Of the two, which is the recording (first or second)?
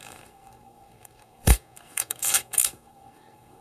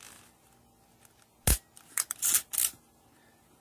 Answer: second